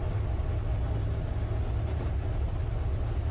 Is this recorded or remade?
recorded